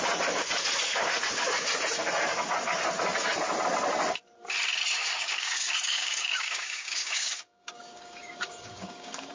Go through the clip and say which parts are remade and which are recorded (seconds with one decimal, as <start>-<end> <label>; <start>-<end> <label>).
0.0-5.0 recorded; 5.0-9.3 remade